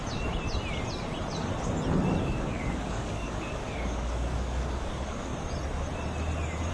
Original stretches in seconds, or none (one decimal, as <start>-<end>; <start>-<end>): 0.0-2.2; 5.3-6.7